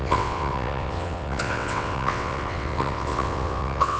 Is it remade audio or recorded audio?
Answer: remade